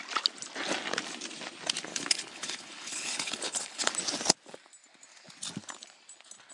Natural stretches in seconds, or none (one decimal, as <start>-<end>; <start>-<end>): 0.0-1.9; 3.9-6.5